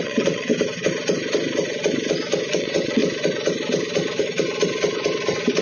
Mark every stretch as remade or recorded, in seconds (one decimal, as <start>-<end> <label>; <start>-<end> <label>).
0.0-0.5 remade; 0.5-2.5 recorded; 2.5-3.0 remade; 3.0-5.6 recorded